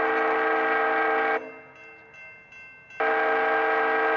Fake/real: real